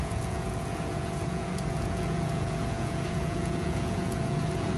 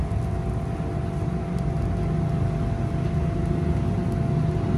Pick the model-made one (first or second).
first